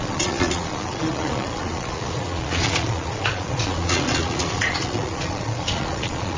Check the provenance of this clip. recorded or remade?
remade